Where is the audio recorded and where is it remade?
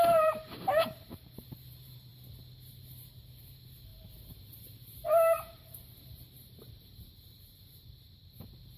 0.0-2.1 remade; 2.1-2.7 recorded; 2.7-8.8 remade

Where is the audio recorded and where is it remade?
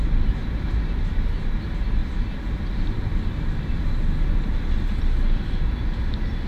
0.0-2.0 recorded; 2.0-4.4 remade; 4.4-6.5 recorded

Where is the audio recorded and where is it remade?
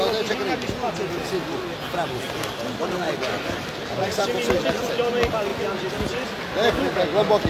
0.0-7.5 recorded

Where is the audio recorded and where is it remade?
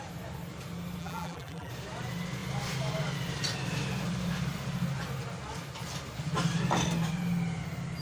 0.0-1.0 recorded; 1.0-1.7 remade; 1.7-8.0 recorded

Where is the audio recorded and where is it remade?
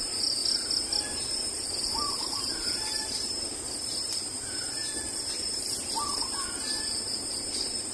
0.0-0.4 remade; 0.4-1.1 recorded; 1.1-3.5 remade; 3.5-4.0 recorded; 4.0-7.9 remade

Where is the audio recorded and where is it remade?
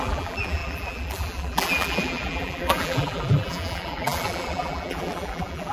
0.0-5.7 remade